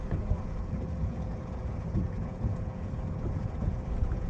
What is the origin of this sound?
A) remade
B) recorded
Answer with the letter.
A